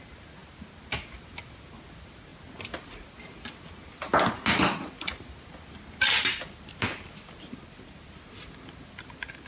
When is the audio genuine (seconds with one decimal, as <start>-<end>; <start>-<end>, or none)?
0.0-9.5